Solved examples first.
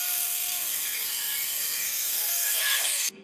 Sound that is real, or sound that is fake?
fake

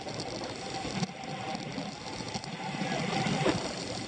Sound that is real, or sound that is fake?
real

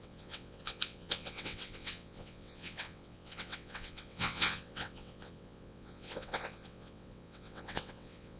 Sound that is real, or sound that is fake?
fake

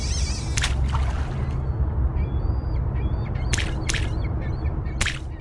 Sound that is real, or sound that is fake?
real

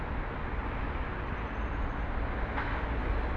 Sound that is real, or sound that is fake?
real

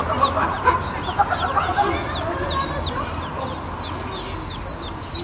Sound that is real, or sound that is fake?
real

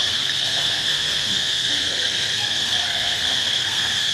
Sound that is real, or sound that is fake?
fake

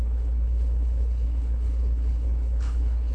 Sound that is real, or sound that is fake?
fake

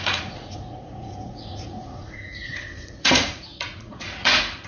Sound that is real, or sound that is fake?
fake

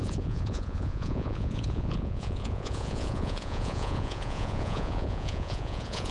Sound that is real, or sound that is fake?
fake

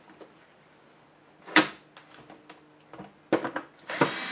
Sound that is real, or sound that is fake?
real